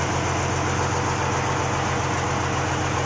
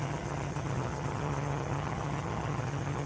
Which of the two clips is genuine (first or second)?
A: first